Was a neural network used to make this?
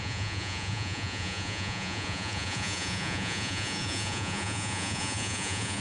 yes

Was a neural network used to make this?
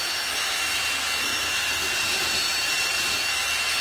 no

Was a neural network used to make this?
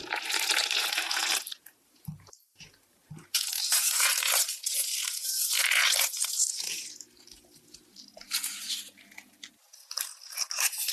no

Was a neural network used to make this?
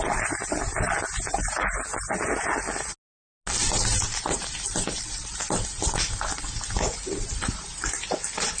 no